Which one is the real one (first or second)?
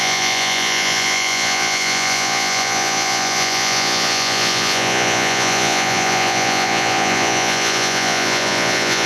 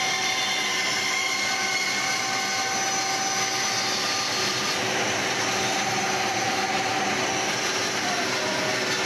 second